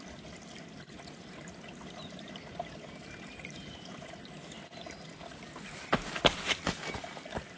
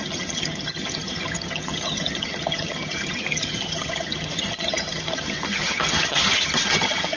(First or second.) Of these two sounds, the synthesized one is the second